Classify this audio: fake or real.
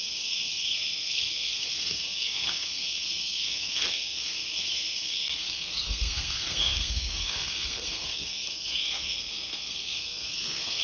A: fake